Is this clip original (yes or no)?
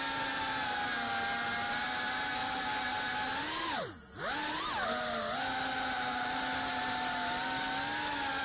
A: yes